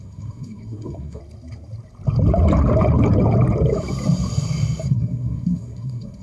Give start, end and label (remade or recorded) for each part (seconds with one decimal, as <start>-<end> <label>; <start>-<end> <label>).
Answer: 0.0-1.2 remade; 1.2-4.9 recorded; 4.9-6.2 remade